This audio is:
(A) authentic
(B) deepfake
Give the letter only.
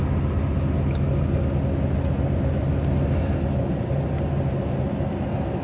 A